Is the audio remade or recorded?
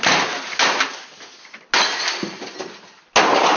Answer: recorded